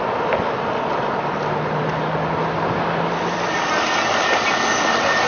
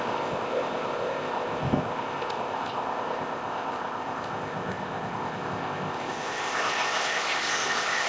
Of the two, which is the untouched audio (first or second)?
first